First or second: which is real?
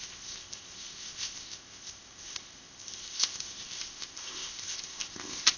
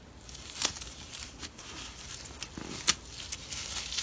second